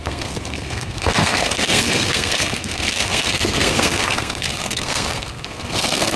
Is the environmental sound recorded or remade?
remade